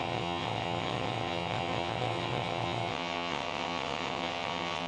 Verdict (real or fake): fake